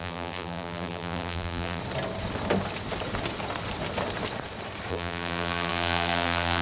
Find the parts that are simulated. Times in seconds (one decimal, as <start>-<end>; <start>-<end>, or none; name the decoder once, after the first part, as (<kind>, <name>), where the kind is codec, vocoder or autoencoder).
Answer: 0.0-1.8 (vocoder, BigVGAN v2); 4.9-6.6